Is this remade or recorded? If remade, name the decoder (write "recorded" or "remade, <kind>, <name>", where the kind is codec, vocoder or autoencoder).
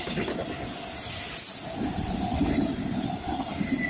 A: recorded